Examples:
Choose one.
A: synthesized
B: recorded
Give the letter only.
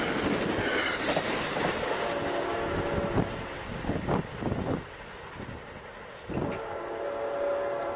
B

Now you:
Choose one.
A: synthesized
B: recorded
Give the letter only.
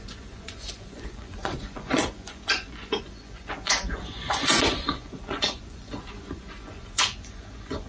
A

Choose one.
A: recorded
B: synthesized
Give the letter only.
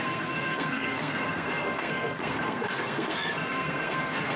B